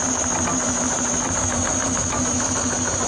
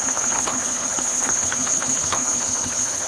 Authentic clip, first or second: first